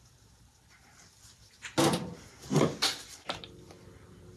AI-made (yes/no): no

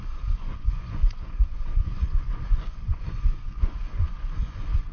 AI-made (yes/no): yes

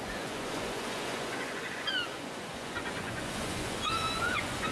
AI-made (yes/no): yes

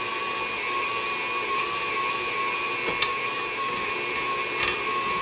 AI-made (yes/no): no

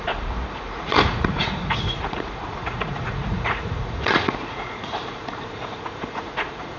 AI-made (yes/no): yes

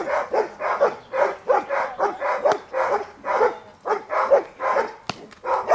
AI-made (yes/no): no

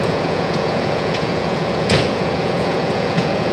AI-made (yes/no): yes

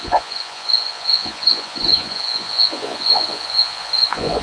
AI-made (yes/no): yes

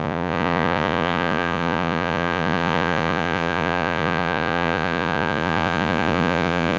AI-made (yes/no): yes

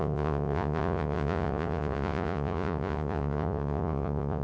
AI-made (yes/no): yes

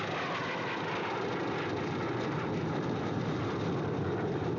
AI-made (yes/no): no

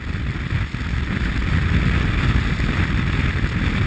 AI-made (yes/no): no